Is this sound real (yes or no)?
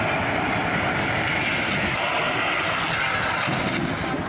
yes